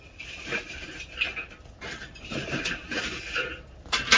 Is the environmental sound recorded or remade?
recorded